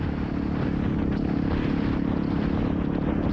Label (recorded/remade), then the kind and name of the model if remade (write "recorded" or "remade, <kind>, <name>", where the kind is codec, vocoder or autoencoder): recorded